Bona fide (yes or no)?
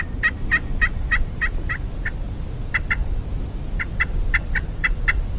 yes